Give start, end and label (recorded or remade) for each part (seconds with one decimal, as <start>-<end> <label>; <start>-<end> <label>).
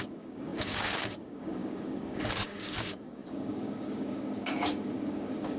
0.0-5.6 remade